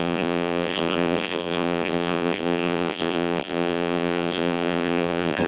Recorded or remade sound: remade